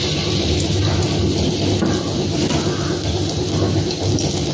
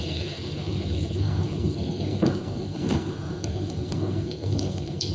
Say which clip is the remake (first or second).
second